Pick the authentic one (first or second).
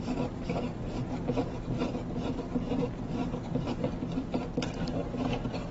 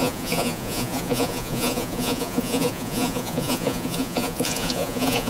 first